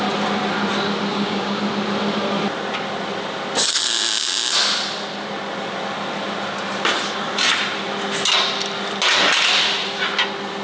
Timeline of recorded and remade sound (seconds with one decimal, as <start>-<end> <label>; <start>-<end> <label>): 0.0-1.1 recorded; 1.1-1.6 remade; 1.6-10.6 recorded